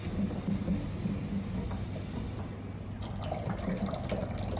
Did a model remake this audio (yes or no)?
no